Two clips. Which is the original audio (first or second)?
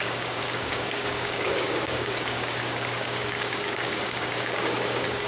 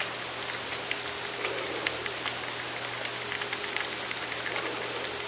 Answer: second